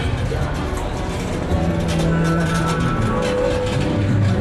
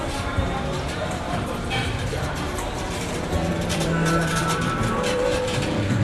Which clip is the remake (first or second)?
second